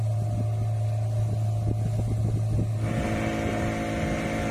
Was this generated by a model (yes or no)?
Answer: no